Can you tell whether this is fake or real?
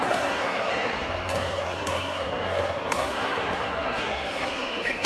fake